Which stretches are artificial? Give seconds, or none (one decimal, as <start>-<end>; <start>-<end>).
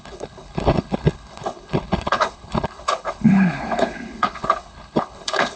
0.0-5.6